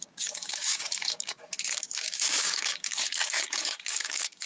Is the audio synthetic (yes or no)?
yes